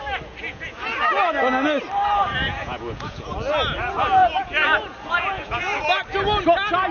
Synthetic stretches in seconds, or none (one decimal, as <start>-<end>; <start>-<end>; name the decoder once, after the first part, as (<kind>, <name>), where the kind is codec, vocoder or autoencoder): 0.4-1.0 (vocoder, Vocos); 2.4-3.2; 4.2-5.8